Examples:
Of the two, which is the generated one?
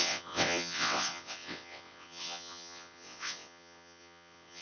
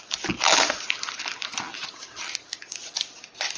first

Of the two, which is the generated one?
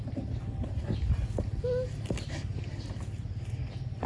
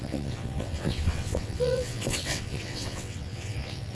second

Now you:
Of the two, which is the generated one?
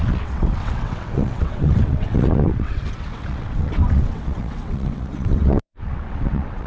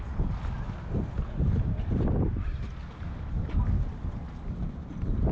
first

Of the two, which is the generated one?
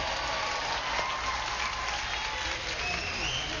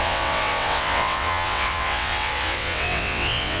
second